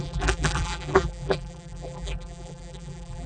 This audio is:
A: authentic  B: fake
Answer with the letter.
B